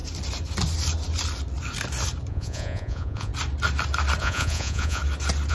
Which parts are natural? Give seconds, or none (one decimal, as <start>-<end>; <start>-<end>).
0.0-2.3; 3.3-4.2; 5.0-5.5